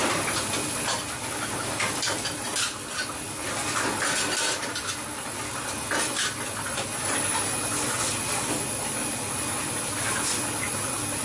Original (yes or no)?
yes